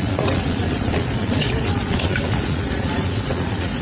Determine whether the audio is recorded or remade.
remade